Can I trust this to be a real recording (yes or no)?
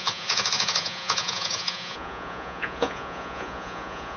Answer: no